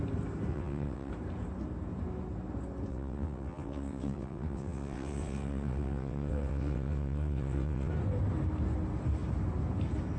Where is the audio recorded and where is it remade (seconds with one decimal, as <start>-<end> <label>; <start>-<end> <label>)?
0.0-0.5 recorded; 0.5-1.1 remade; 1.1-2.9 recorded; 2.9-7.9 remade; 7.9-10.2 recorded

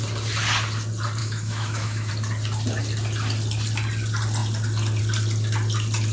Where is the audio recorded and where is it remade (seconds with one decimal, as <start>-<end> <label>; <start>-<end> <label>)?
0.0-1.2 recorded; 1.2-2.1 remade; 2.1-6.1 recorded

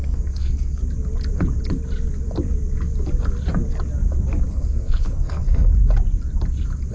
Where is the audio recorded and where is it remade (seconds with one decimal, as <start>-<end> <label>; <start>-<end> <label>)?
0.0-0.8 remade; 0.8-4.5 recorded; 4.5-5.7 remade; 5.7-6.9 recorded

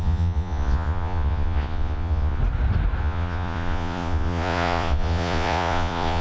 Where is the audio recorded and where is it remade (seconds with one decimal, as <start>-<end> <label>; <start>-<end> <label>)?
0.0-2.4 remade; 2.4-3.0 recorded; 3.0-6.2 remade